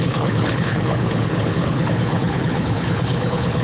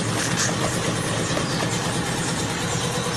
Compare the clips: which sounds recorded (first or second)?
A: second